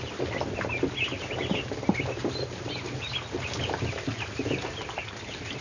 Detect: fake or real real